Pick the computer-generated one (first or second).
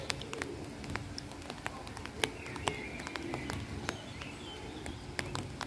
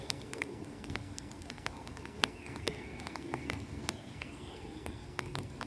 second